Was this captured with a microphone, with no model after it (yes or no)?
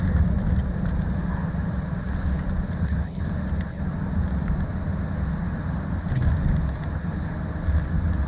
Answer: yes